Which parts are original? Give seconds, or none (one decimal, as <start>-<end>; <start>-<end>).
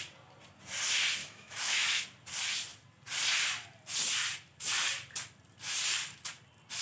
0.0-1.2; 2.0-6.8